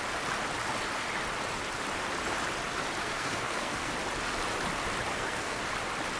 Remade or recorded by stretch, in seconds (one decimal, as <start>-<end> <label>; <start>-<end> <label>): 0.0-3.0 recorded; 3.0-3.9 remade; 3.9-5.1 recorded; 5.1-5.6 remade; 5.6-6.2 recorded